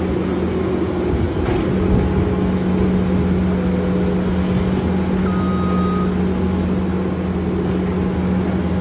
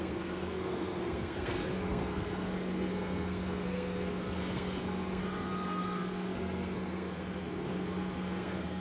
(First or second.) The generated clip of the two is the second